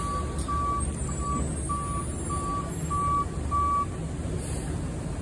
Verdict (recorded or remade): recorded